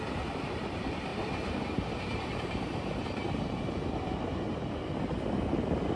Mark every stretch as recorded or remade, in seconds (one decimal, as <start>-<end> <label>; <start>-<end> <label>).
0.0-1.1 recorded; 1.1-4.7 remade; 4.7-6.0 recorded